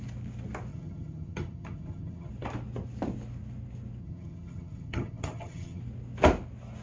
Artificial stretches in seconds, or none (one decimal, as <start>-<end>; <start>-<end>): 0.7-2.3; 4.0-5.8